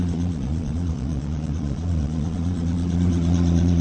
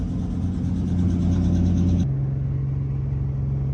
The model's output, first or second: first